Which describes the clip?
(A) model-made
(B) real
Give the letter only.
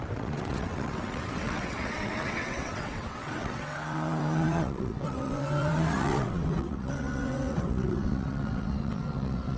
A